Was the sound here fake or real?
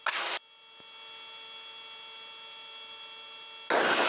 real